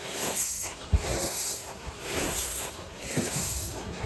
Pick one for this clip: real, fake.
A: fake